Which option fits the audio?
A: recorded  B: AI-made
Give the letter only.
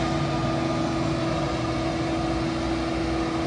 A